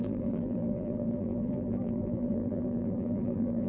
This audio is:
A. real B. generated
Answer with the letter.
B